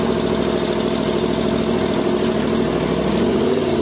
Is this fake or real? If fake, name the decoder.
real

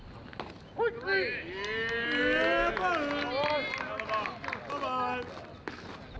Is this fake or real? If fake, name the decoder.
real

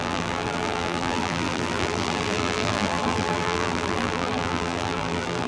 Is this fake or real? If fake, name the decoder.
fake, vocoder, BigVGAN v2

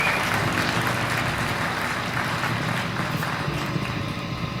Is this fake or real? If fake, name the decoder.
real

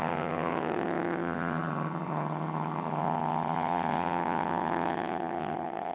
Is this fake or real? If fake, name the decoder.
fake, vocoder, HiFi-GAN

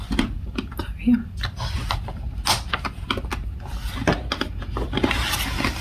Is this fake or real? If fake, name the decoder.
real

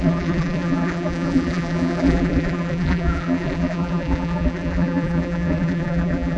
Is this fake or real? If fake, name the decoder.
fake, vocoder, BigVGAN v2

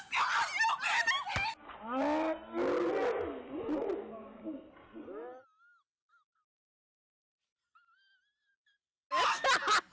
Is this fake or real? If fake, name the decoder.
real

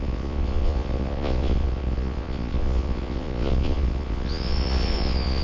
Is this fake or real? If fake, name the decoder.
fake, vocoder, Vocos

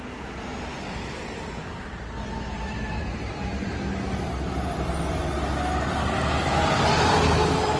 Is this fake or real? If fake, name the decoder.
real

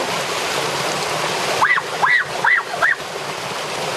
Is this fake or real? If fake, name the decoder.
real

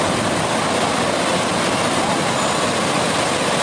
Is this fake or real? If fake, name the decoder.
real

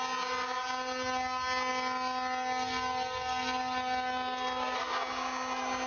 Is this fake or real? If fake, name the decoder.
real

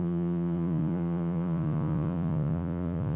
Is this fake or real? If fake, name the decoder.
fake, vocoder, Vocos